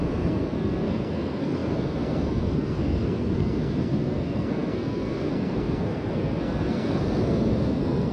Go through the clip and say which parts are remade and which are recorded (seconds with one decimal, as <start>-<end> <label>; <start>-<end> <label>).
0.0-8.1 remade